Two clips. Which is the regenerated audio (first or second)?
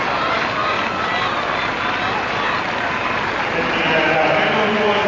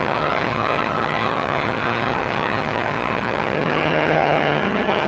second